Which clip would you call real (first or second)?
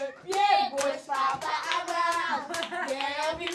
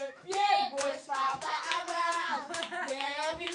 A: first